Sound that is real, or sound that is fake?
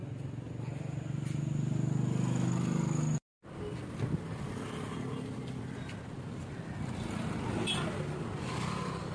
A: real